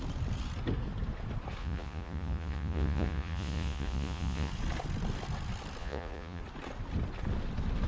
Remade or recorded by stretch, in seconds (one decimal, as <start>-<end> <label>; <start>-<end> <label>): 0.0-1.6 recorded; 1.6-4.5 remade; 4.5-5.8 recorded; 5.8-6.4 remade; 6.4-7.9 recorded